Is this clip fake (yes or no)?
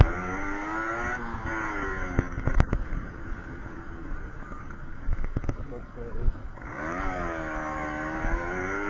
yes